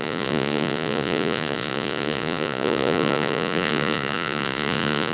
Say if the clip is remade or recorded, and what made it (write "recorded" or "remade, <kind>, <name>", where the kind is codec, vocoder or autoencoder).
remade, vocoder, Vocos